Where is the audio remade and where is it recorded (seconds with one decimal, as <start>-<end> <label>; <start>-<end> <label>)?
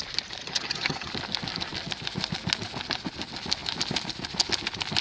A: 0.0-0.4 recorded; 0.4-1.1 remade; 1.1-5.0 recorded